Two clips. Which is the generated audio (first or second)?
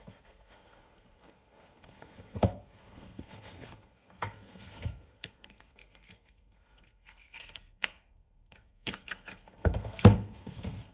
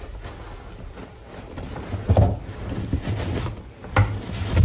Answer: first